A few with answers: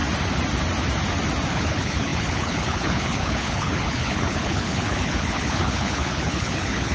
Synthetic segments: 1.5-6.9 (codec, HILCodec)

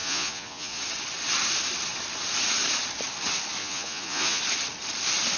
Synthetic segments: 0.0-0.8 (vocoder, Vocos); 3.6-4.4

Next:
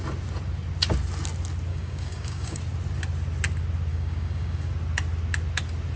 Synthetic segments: 1.7-2.6 (codec, DAC); 3.9-4.7

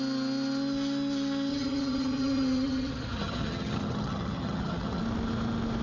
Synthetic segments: 1.5-5.0 (vocoder, HiFi-GAN)